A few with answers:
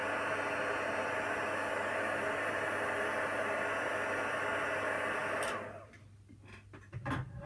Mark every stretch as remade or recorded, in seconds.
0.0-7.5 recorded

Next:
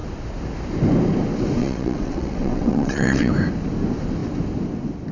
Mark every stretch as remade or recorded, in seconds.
0.0-1.6 recorded; 1.6-3.3 remade; 3.3-5.1 recorded

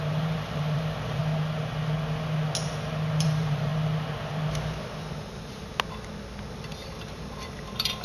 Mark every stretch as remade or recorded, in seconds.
0.0-1.2 remade; 1.2-3.2 recorded; 3.2-3.7 remade; 3.7-5.1 recorded; 5.1-5.7 remade; 5.7-6.5 recorded; 6.5-8.0 remade